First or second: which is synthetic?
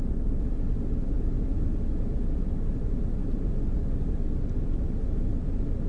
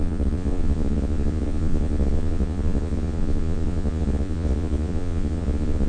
second